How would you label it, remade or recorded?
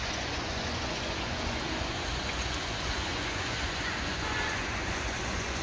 remade